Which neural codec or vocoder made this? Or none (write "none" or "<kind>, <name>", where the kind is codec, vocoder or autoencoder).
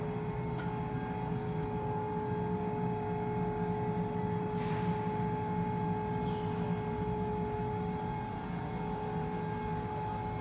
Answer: none